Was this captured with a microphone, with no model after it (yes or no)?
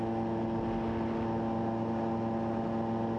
yes